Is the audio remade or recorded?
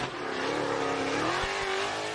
recorded